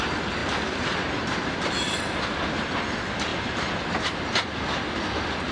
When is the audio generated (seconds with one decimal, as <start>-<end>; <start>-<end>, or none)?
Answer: 0.4-1.7; 3.3-4.2